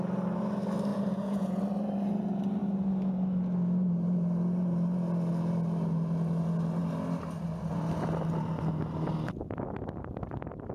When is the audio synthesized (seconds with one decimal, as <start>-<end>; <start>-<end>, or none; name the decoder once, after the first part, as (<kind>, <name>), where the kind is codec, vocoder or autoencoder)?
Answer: 0.9-1.6 (vocoder, Vocos)